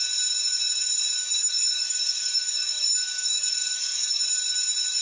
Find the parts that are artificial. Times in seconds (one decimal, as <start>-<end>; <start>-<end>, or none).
1.2-4.2